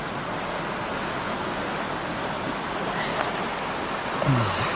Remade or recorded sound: recorded